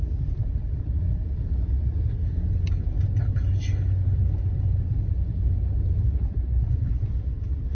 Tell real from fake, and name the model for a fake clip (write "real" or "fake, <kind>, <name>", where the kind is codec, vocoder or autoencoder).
real